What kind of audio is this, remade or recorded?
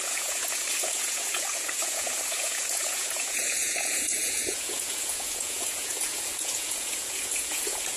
remade